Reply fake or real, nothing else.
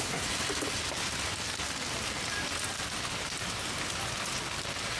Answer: real